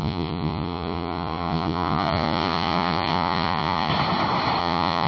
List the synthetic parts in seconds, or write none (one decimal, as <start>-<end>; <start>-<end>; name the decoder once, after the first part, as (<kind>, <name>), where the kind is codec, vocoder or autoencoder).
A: 0.0-3.9 (vocoder, Vocos); 4.6-5.1